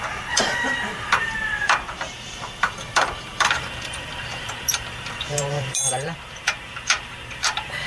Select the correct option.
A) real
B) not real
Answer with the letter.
B